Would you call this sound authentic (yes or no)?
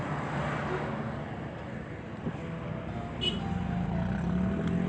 yes